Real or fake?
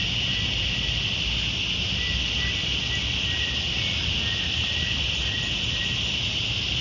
real